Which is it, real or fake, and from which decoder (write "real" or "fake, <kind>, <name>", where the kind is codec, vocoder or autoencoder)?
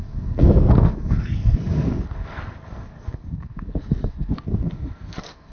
fake, codec, SNAC